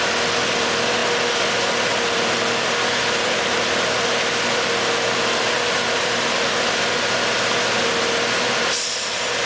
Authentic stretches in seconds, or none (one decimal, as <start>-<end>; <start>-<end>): 0.0-9.5